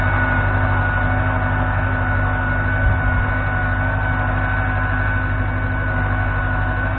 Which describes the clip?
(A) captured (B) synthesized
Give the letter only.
A